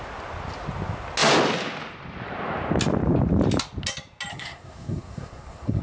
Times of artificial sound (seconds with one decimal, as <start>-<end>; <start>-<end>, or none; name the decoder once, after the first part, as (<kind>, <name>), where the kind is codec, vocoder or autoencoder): 4.3-5.8 (codec, SNAC)